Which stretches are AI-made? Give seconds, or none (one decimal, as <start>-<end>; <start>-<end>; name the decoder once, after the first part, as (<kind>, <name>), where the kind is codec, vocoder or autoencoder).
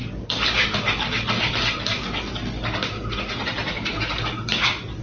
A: 3.6-4.2 (vocoder, BigVGAN v2)